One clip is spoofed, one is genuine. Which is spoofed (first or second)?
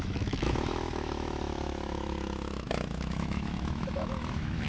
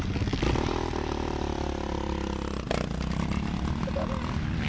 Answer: first